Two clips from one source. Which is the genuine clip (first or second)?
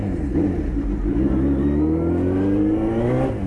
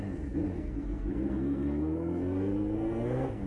first